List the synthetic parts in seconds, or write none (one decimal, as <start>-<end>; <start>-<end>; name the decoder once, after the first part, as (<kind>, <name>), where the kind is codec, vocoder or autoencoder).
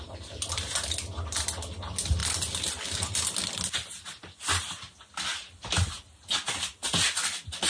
none